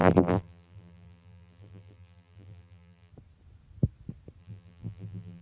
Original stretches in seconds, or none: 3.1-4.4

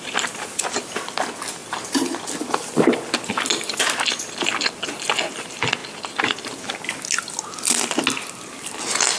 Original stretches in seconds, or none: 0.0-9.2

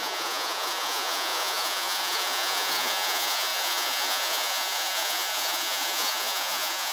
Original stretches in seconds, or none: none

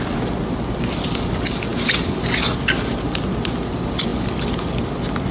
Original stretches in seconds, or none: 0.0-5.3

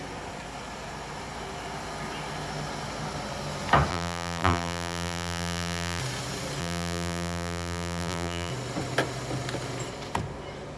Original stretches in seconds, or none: 0.0-3.9; 6.0-6.6; 8.5-10.8

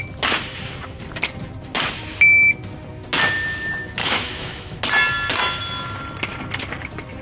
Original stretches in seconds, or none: 0.0-4.0; 4.8-7.2